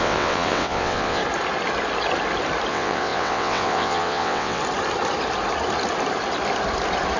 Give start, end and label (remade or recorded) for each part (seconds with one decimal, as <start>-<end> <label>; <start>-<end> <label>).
0.0-1.2 remade; 1.2-2.7 recorded; 2.7-4.6 remade; 4.6-7.2 recorded